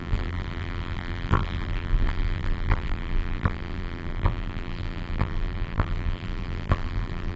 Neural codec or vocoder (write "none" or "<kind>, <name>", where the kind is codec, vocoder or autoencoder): vocoder, BigVGAN v2